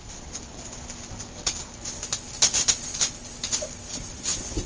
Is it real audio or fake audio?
real